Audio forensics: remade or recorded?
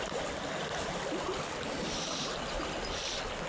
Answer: recorded